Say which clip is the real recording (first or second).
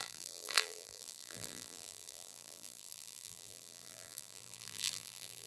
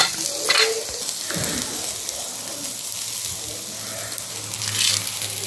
second